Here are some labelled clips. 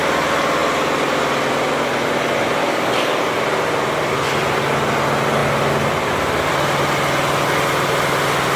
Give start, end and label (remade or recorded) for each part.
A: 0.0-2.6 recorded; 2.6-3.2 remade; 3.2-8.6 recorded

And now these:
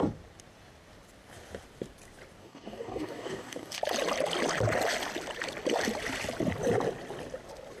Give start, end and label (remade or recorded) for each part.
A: 0.0-2.4 recorded; 2.4-3.8 remade; 3.8-7.8 recorded

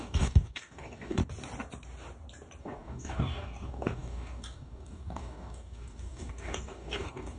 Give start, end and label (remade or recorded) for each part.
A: 0.0-1.2 remade; 1.2-2.6 recorded; 2.6-7.4 remade

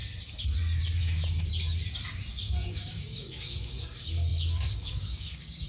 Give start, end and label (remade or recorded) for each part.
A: 0.0-1.0 recorded; 1.0-1.5 remade; 1.5-2.4 recorded; 2.4-5.7 remade

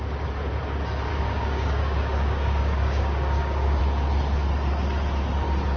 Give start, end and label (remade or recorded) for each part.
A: 0.0-1.1 recorded; 1.1-3.8 remade; 3.8-5.8 recorded

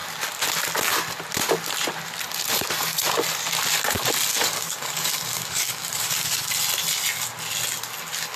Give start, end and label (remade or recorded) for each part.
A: 0.0-4.3 recorded; 4.3-6.5 remade; 6.5-8.4 recorded

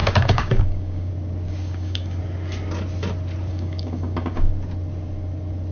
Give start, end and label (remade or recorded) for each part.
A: 0.0-1.1 remade; 1.1-1.6 recorded; 1.6-2.2 remade; 2.2-3.5 recorded; 3.5-4.5 remade; 4.5-5.7 recorded

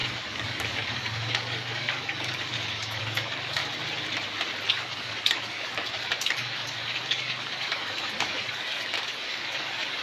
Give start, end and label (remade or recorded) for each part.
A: 0.0-3.6 remade; 3.6-4.7 recorded; 4.7-10.0 remade